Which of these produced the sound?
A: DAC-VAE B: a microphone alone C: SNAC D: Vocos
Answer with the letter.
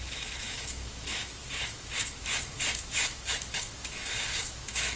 A